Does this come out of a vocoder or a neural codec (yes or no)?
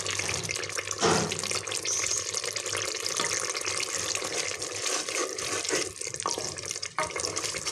no